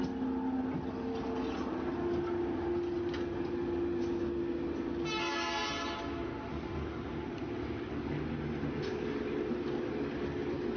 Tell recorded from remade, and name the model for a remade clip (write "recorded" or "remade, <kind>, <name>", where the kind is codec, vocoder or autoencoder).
recorded